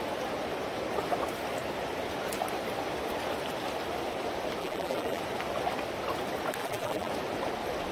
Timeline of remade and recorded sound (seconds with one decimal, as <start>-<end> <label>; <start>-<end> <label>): 0.0-4.6 recorded; 4.6-5.2 remade; 5.2-6.6 recorded; 6.6-7.1 remade; 7.1-7.9 recorded